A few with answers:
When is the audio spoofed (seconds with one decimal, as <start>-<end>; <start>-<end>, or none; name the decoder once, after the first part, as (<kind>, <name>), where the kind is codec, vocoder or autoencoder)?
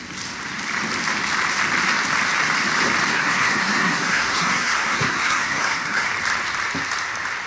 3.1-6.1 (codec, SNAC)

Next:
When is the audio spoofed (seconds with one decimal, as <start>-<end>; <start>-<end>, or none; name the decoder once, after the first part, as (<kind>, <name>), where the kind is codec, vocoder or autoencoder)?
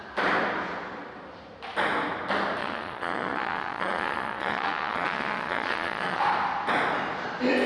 2.6-6.2 (vocoder, Vocos)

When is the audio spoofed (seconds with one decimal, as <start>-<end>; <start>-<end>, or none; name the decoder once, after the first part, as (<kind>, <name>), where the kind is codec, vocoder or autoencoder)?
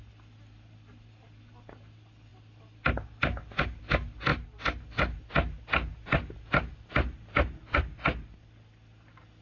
none